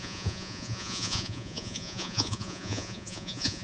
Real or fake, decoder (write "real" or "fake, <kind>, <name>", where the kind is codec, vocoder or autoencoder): fake, vocoder, Vocos